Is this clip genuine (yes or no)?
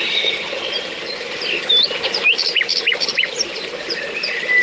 yes